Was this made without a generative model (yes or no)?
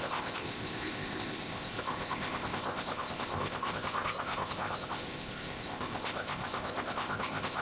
no